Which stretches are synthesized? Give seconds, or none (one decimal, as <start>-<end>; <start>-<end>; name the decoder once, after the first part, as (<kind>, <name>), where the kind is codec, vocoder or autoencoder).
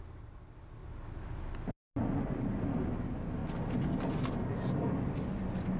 none